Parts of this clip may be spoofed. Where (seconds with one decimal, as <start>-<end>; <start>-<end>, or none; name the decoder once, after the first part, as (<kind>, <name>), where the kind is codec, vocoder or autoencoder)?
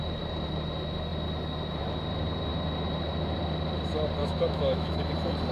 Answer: 4.2-5.1 (autoencoder, DAC-VAE)